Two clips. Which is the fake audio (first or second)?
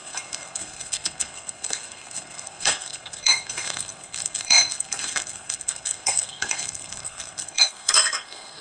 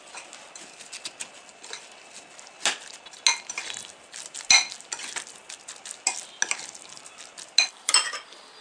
first